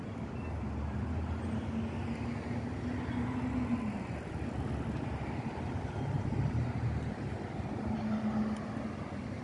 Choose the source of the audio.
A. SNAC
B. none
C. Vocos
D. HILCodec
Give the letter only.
B